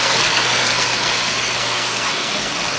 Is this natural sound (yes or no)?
no